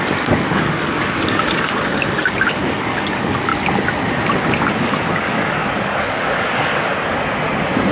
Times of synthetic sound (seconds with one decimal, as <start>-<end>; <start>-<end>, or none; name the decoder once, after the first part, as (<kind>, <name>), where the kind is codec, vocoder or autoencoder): 0.0-3.5 (codec, DAC); 4.8-6.9